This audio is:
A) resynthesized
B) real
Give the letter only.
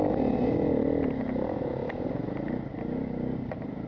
B